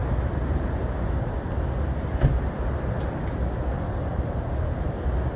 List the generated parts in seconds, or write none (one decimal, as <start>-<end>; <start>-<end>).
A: none